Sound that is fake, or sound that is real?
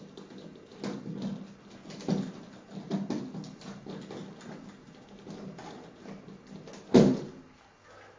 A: real